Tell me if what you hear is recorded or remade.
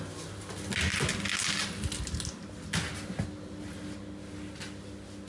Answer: recorded